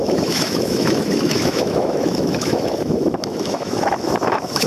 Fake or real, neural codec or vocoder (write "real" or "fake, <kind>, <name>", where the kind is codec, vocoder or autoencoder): fake, autoencoder, DAC-VAE